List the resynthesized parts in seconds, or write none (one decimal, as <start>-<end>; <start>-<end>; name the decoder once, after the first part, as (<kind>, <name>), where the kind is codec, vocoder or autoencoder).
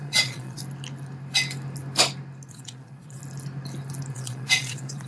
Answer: 0.0-0.6 (vocoder, Vocos); 2.5-3.2; 4.1-5.1